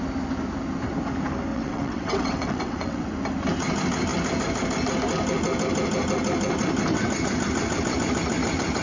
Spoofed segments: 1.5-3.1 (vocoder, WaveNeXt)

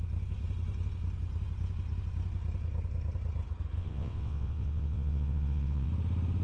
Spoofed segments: 3.8-5.9 (vocoder, WaveNeXt)

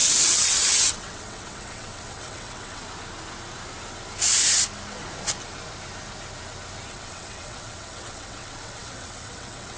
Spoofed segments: 0.0-2.8 (vocoder, WaveNeXt); 6.9-9.8

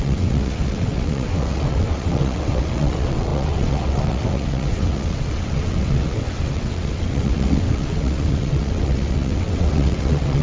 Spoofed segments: 0.0-10.4 (vocoder, WaveNeXt)

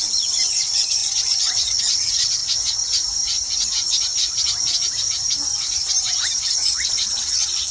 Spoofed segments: 0.0-2.4 (vocoder, WaveNeXt); 6.9-7.7

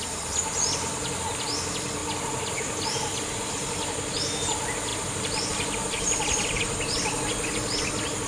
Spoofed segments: none

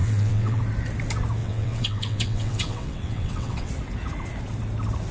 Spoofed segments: 0.0-0.6 (vocoder, WaveNeXt); 1.4-3.7